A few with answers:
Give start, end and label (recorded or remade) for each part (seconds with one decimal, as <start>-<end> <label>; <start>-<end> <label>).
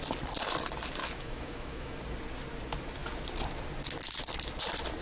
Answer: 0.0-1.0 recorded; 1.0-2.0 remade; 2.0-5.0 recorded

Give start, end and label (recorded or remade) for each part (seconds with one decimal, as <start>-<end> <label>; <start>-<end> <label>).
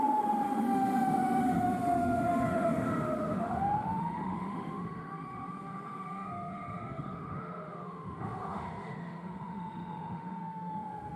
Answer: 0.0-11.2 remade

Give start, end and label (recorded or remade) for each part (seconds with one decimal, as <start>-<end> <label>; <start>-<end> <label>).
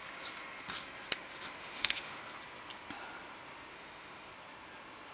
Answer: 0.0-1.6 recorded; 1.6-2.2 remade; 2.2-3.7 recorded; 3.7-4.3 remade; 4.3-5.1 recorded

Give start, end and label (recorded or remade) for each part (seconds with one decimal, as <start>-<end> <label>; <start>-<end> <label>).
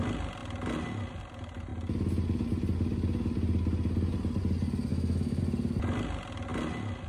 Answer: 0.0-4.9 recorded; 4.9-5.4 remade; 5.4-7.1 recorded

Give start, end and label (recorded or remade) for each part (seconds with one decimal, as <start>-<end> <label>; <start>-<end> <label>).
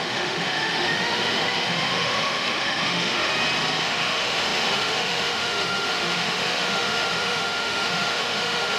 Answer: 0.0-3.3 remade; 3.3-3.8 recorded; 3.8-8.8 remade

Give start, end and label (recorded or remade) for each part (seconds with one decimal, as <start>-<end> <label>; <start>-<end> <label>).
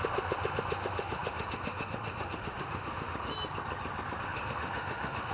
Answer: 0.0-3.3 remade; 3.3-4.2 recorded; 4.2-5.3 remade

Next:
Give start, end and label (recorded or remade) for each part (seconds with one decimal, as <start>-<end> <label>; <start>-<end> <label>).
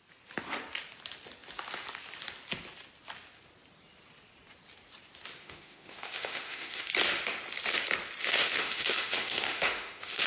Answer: 0.0-5.4 recorded; 5.4-6.9 remade; 6.9-8.2 recorded; 8.2-10.3 remade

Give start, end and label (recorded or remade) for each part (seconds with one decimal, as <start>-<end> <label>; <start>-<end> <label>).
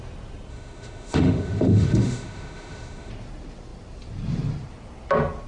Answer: 0.0-0.5 recorded; 0.5-3.1 remade; 3.1-5.5 recorded